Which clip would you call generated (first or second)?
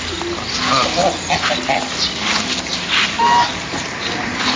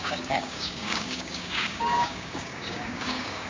second